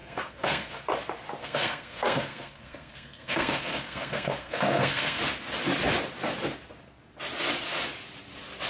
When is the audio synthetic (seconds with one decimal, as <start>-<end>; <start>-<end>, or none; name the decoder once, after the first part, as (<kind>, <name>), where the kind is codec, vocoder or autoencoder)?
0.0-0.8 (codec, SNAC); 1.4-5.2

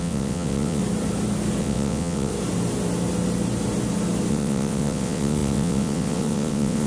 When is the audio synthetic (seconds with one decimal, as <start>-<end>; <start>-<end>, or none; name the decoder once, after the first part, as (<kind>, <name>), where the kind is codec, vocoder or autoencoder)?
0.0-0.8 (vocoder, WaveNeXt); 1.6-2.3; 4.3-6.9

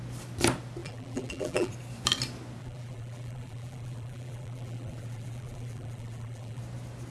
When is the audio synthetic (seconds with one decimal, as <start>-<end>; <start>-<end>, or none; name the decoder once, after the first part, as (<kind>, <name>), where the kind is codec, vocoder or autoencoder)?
0.8-1.7 (vocoder, BigVGAN v2); 2.6-6.6

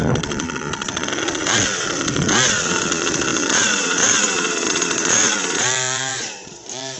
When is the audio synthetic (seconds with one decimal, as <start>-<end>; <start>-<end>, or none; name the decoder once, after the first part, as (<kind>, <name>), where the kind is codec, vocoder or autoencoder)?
0.0-7.0 (vocoder, Vocos)

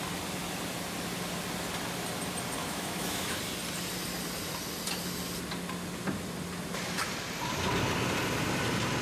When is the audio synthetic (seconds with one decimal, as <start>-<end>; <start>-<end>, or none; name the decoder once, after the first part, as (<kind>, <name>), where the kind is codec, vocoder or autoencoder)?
2.6-3.4 (autoencoder, DAC-VAE)

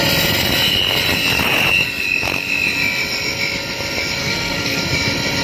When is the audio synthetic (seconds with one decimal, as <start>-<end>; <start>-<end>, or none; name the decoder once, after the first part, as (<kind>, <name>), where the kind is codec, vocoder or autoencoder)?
4.2-4.8 (codec, SNAC)

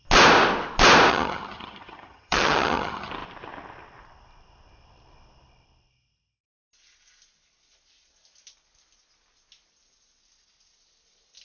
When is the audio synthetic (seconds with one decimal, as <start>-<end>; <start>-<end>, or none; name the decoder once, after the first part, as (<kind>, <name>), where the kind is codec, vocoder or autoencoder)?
1.1-3.1 (vocoder, HiFi-GAN)

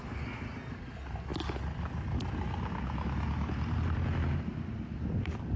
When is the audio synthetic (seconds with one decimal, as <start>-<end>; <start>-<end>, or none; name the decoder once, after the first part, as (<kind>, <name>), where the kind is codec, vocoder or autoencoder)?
none